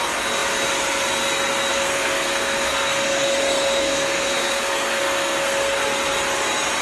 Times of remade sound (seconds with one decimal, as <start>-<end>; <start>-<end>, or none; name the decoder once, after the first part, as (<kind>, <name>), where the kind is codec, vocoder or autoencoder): 1.7-5.8 (codec, SNAC)